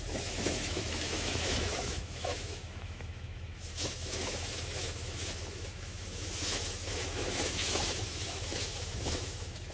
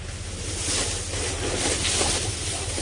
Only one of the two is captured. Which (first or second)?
second